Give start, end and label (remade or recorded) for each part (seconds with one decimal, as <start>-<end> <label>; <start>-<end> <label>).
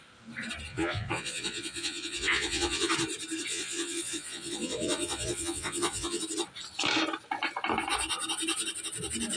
0.0-0.7 recorded; 0.7-2.9 remade; 2.9-3.5 recorded; 3.5-6.2 remade; 6.2-9.4 recorded